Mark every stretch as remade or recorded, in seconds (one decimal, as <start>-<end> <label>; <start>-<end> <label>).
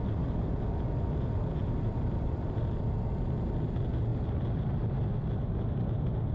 0.0-1.6 recorded; 1.6-3.2 remade; 3.2-6.3 recorded